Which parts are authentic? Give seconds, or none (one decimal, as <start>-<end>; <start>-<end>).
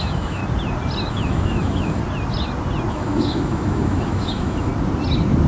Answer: 0.4-1.1; 2.0-2.9; 4.7-5.5